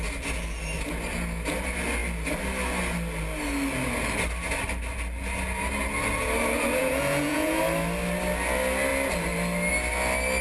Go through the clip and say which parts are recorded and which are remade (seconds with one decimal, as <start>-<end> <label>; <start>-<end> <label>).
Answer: 0.0-6.8 recorded; 6.8-7.6 remade; 7.6-10.4 recorded